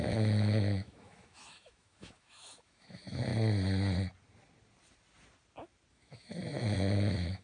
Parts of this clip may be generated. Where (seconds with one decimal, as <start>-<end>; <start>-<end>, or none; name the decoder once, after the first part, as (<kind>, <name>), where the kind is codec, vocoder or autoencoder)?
0.0-3.3 (autoencoder, DAC-VAE); 5.9-7.4